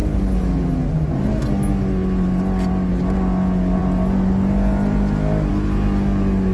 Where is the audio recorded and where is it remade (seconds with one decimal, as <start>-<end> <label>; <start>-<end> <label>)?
0.0-6.5 recorded